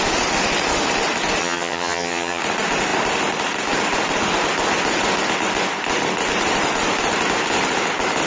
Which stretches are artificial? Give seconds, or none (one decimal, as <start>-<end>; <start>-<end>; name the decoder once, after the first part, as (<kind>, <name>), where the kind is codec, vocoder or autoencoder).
1.4-2.4 (vocoder, HiFi-GAN)